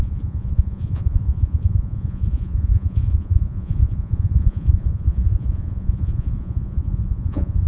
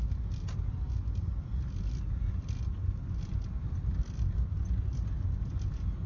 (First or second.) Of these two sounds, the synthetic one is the first